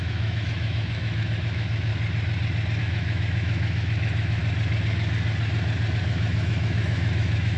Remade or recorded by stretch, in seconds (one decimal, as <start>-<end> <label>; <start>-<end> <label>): 0.0-1.9 remade; 1.9-2.8 recorded; 2.8-4.4 remade; 4.4-6.0 recorded; 6.0-7.6 remade